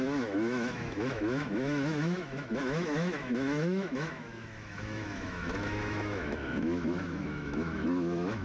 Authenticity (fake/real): fake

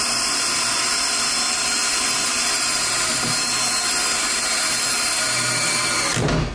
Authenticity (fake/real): real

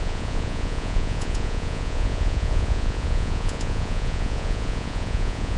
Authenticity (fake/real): fake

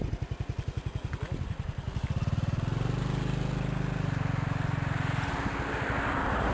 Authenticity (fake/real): real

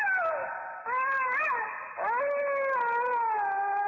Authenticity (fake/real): real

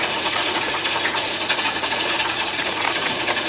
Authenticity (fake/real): fake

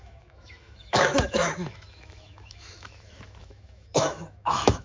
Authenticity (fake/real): fake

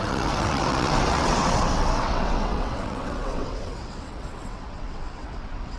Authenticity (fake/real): fake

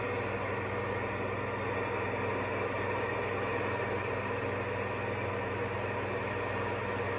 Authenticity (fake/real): real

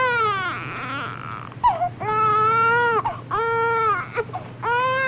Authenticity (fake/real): real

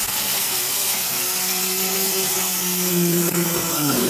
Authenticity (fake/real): fake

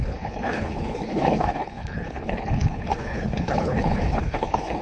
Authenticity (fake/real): fake